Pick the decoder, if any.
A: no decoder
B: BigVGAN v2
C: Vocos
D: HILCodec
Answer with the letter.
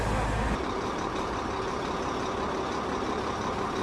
A